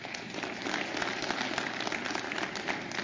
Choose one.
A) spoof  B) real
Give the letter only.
B